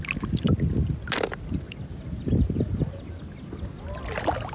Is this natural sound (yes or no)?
yes